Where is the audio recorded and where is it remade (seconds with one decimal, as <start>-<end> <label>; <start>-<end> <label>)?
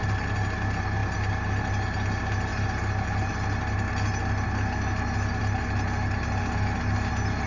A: 0.0-7.5 recorded